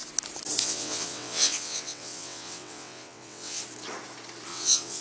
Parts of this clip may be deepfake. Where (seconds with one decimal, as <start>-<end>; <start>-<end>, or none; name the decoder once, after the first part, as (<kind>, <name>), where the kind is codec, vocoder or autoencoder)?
0.6-3.6 (vocoder, WaveNeXt); 4.5-5.0